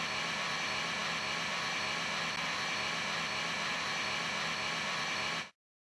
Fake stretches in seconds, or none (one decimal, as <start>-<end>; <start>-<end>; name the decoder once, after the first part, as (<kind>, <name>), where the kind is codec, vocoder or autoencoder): none